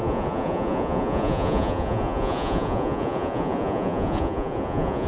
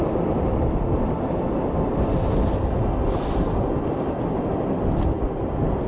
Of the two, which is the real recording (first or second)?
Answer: second